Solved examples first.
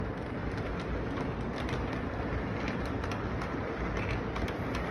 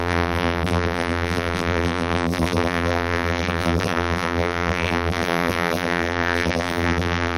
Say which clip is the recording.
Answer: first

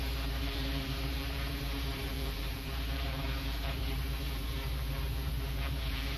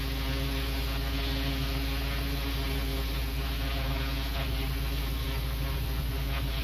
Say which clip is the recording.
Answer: second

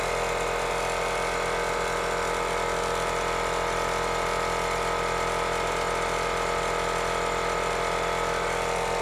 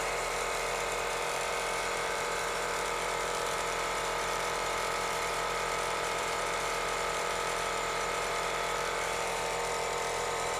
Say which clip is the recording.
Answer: first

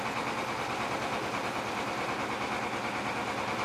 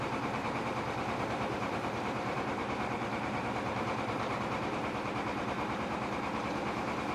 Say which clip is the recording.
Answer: first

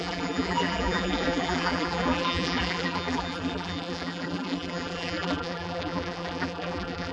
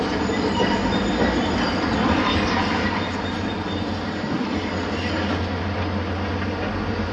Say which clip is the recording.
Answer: second